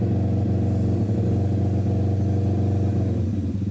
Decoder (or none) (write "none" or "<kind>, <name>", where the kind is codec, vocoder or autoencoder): none